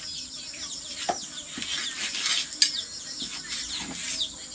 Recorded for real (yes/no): yes